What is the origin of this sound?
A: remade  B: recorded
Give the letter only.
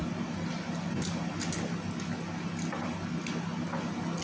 B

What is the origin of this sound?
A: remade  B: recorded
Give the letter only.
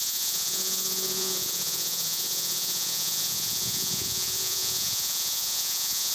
A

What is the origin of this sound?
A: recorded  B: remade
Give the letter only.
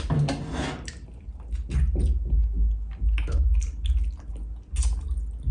A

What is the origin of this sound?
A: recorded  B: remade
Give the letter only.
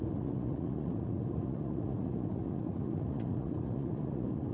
B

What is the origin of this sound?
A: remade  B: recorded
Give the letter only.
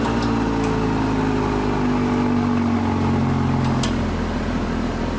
B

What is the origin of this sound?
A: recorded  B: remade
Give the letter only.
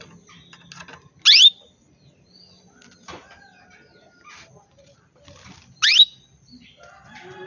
A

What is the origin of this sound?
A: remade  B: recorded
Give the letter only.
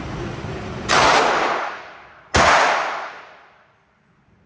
B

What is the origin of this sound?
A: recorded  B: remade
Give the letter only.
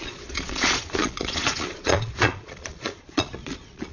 B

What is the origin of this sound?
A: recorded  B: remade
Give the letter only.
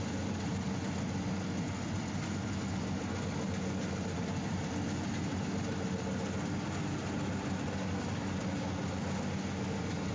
A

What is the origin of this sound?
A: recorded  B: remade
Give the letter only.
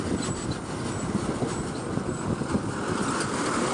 A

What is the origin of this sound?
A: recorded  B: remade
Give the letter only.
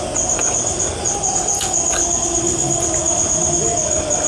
A